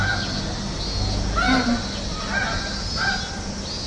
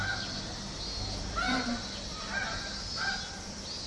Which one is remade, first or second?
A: second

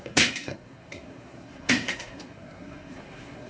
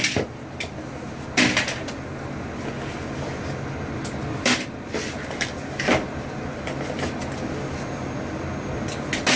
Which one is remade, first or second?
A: first